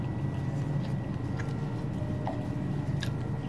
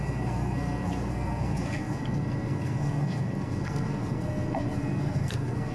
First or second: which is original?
first